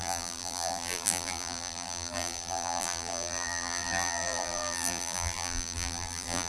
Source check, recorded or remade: remade